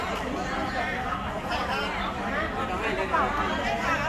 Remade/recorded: recorded